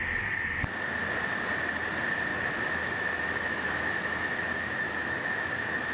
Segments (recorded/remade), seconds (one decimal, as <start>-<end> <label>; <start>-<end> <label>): 0.0-2.3 recorded; 2.3-5.9 remade